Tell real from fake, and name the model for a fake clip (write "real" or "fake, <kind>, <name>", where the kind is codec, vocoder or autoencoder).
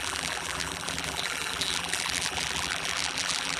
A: fake, vocoder, BigVGAN v2